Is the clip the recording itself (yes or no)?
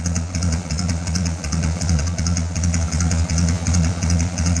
no